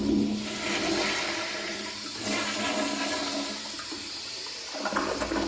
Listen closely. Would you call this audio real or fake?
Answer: real